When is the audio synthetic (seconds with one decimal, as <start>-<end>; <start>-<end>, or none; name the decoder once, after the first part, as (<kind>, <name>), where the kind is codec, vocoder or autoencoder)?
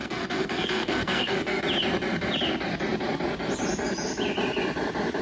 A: 0.0-1.6 (codec, SNAC)